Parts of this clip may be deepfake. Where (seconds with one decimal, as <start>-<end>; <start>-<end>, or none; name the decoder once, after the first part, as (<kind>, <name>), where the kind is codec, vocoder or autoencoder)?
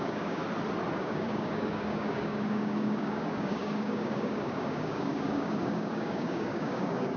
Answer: 0.0-0.4 (codec, DAC); 1.0-7.2